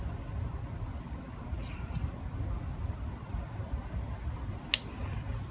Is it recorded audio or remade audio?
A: recorded